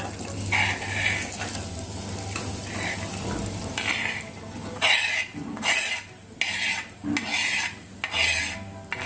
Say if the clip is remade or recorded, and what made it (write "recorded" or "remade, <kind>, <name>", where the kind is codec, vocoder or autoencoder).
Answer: recorded